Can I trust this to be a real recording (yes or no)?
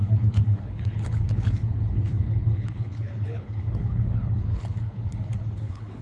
no